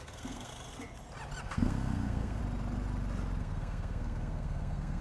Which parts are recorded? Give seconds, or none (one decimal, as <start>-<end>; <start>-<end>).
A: 0.5-1.4; 2.4-3.4